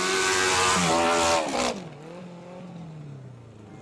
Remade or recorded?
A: recorded